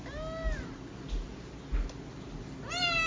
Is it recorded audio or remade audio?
recorded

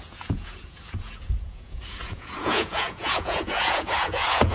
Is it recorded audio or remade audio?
remade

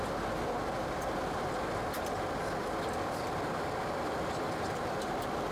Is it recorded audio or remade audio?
remade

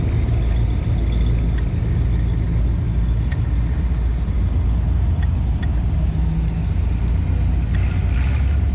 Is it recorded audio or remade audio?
recorded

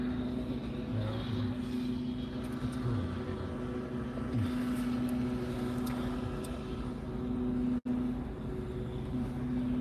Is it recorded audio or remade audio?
recorded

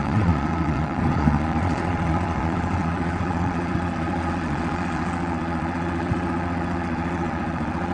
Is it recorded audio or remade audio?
remade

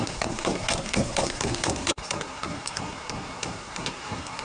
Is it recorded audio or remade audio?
remade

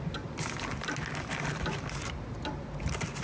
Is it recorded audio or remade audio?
recorded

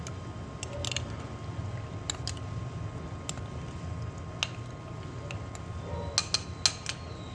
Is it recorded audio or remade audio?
recorded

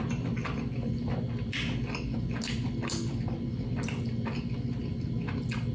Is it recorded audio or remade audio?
recorded